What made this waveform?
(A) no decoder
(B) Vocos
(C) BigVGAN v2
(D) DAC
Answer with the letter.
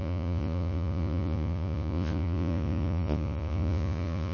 B